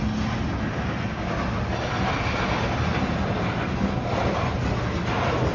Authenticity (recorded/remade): recorded